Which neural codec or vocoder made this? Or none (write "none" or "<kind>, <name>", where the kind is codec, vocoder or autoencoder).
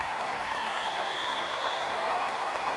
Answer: codec, SNAC